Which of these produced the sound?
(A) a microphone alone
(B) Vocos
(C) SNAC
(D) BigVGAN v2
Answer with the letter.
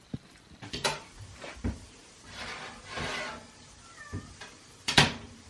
D